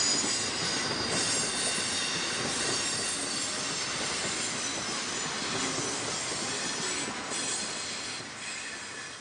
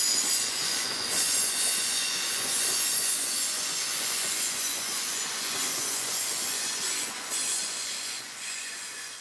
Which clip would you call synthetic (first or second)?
second